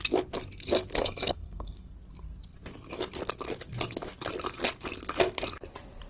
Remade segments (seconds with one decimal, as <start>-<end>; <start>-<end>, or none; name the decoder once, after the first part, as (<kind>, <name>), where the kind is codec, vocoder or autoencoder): 0.9-1.9 (codec, SNAC)